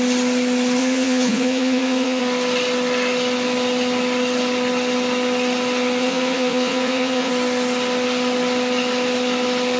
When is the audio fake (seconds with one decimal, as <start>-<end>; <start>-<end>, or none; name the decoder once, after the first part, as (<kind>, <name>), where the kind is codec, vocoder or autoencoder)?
0.8-2.2 (vocoder, Vocos); 6.0-7.3